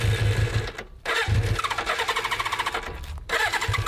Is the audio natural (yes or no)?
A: yes